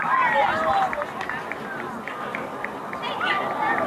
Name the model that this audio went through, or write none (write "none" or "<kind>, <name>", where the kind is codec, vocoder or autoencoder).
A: none